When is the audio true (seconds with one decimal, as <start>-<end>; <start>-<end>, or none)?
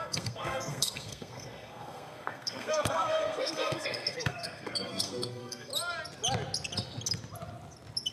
5.7-8.1